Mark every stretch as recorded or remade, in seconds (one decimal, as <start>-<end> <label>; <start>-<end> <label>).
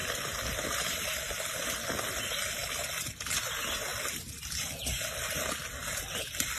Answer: 0.0-6.6 recorded